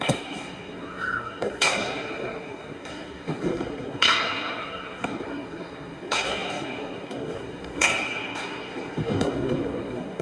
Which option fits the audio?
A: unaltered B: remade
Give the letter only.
B